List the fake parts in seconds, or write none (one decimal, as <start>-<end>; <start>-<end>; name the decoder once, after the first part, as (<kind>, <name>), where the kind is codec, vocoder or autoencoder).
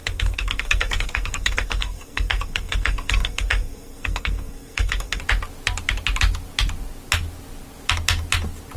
0.0-5.2 (codec, SNAC)